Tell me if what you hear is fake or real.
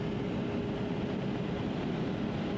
real